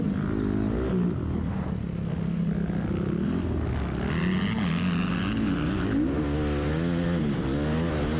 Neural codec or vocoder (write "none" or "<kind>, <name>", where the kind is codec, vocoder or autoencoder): none